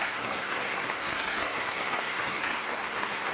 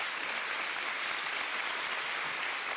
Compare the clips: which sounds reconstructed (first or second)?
first